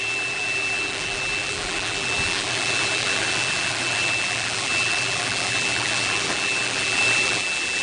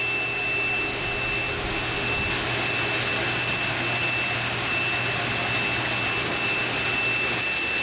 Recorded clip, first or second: second